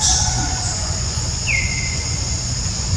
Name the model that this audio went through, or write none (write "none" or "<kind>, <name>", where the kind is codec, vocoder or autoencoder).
vocoder, Vocos